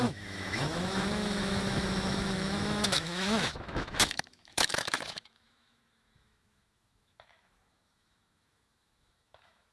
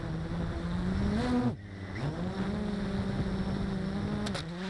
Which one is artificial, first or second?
first